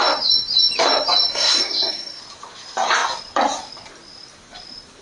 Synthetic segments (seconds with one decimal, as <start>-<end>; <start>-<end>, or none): 1.3-2.2